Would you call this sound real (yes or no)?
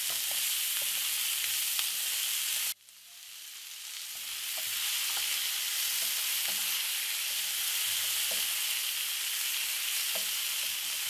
yes